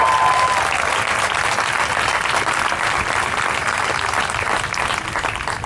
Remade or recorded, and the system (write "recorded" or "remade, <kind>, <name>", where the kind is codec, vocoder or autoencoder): recorded